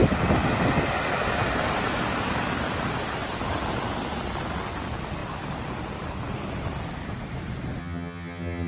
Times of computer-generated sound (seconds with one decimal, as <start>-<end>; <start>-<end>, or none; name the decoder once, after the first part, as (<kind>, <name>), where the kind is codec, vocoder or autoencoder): 7.8-8.7 (vocoder, HiFi-GAN)